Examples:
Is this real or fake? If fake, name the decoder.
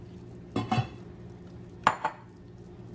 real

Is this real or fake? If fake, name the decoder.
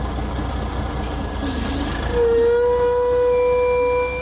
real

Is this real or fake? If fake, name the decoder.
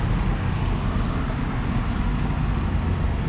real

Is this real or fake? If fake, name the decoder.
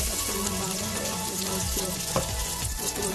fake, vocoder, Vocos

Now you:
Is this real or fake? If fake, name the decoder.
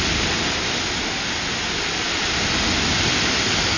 real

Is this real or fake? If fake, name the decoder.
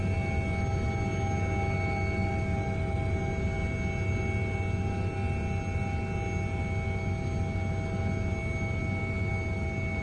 real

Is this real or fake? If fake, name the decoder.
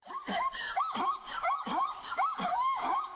fake, codec, DAC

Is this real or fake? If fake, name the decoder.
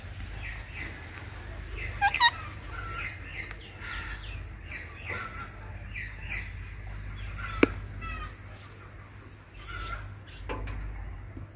real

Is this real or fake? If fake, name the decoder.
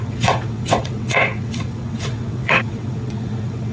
fake, vocoder, WaveNeXt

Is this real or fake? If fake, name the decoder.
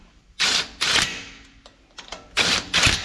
real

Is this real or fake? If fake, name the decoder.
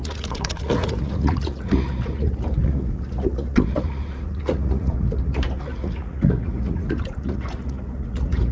fake, vocoder, Vocos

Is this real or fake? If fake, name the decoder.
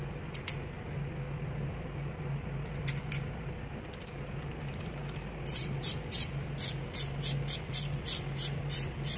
real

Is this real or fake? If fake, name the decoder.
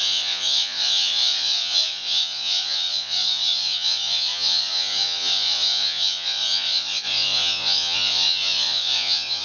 fake, vocoder, Vocos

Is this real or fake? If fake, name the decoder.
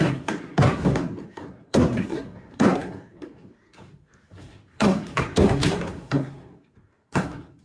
fake, codec, SNAC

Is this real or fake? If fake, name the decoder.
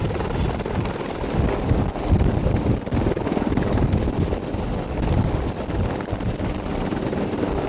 real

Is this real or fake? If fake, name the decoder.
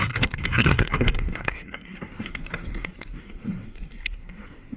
fake, codec, SNAC